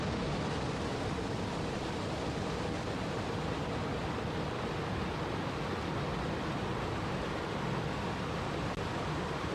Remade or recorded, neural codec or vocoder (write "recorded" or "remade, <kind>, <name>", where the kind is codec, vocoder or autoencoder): recorded